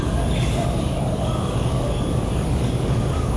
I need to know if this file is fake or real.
fake